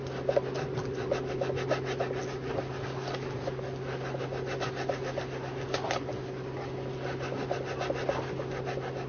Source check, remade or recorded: recorded